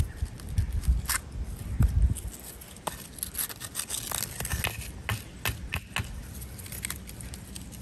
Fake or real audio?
real